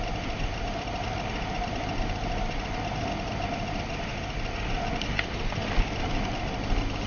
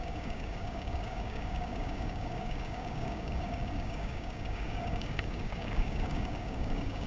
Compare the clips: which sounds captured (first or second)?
first